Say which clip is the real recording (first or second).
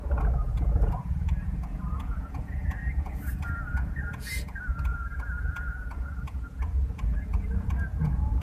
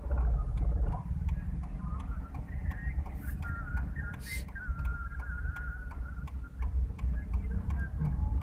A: second